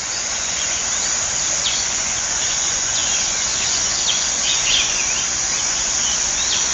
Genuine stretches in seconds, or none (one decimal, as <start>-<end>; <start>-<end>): 0.8-1.6